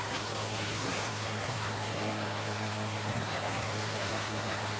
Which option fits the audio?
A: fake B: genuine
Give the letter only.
A